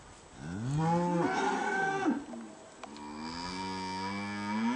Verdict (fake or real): real